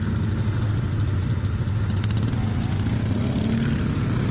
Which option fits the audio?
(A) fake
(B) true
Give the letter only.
B